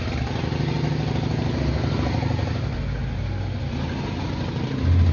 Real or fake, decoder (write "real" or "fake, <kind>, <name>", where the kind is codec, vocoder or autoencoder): real